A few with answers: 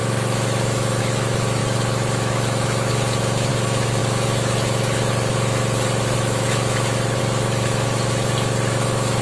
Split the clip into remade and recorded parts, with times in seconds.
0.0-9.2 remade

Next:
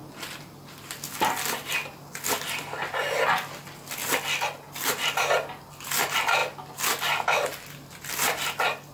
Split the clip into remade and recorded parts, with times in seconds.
0.0-8.9 recorded

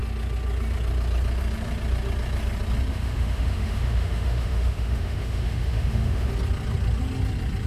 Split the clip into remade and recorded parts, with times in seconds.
0.0-2.9 recorded; 2.9-6.3 remade; 6.3-7.7 recorded

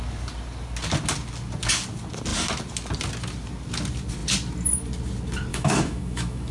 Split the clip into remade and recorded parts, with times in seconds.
0.0-5.5 recorded; 5.5-6.5 remade

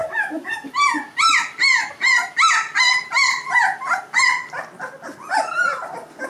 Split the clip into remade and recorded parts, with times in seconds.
0.0-0.7 remade; 0.7-6.3 recorded

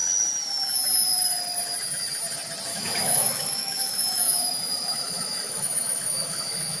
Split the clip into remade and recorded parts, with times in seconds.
0.0-2.7 recorded; 2.7-6.8 remade

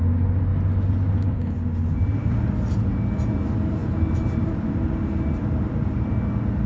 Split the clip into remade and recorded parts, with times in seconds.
0.0-6.7 recorded

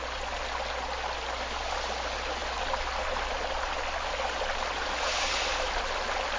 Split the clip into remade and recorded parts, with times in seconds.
0.0-6.4 recorded